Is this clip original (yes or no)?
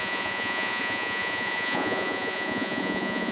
no